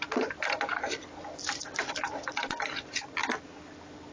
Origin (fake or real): real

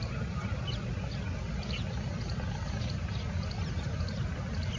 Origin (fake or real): real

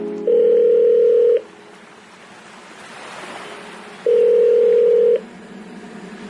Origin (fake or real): real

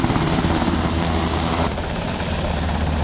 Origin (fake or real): real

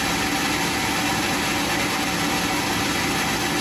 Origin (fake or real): real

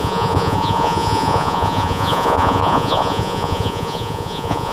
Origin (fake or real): fake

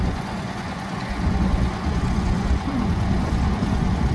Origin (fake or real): fake